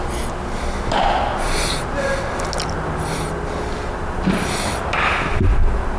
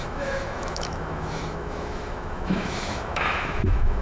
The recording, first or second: first